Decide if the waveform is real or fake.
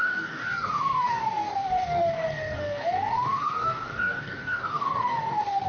fake